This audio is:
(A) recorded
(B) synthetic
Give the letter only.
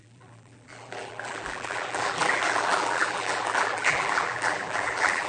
B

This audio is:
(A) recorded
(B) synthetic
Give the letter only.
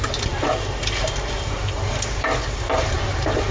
B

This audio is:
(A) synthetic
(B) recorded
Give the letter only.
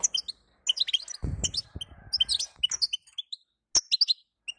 B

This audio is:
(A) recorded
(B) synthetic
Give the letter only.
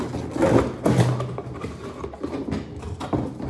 A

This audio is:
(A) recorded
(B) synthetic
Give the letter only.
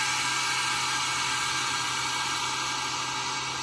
A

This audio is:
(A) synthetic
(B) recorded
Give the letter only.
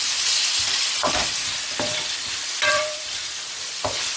A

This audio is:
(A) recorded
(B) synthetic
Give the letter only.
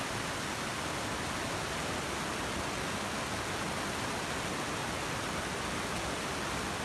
A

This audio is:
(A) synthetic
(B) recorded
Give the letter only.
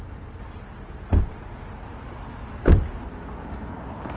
B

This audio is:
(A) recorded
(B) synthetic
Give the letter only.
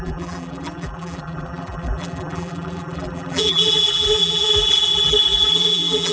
B